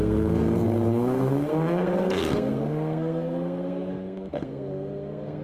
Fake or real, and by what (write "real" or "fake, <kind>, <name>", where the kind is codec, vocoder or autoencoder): fake, codec, SNAC